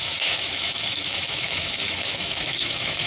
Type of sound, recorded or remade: remade